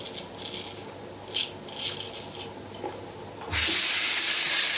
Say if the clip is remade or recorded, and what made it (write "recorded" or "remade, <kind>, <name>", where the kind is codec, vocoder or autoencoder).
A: recorded